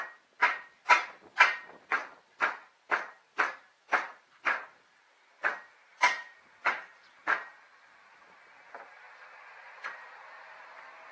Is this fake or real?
real